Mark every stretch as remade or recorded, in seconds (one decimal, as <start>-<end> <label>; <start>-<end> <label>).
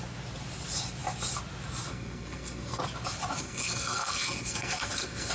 0.0-1.9 recorded; 1.9-2.8 remade; 2.8-3.4 recorded; 3.4-5.3 remade